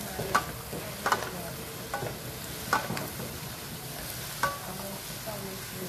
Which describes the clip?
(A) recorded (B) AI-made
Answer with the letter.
A